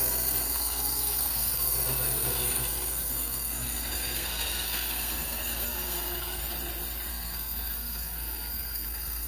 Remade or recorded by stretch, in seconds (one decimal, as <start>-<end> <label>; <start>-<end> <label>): 0.0-6.4 remade; 6.4-7.1 recorded; 7.1-9.3 remade